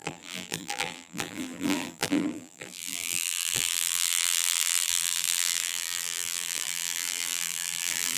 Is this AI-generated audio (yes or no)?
yes